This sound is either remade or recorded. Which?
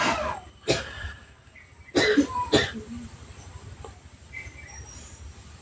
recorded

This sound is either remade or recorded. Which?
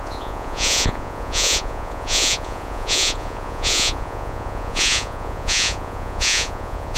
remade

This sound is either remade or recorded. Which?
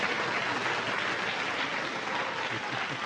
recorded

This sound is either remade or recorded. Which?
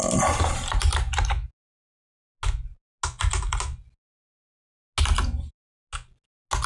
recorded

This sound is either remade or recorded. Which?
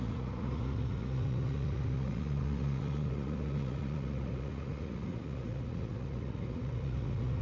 remade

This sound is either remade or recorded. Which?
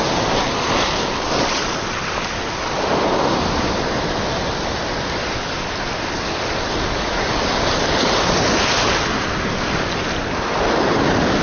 recorded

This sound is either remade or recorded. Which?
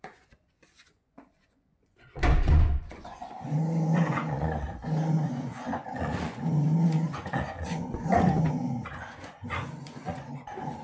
remade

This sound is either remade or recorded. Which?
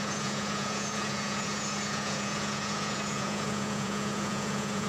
remade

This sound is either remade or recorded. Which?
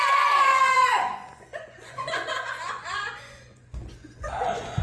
remade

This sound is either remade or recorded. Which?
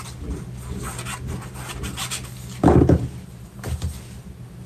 recorded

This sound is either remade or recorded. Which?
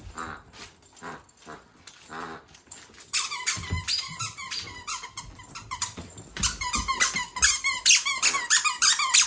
recorded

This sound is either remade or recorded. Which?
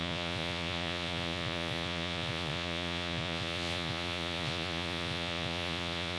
remade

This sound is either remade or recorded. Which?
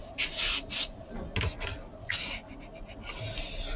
recorded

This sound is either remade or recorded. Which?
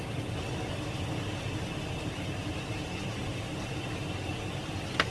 recorded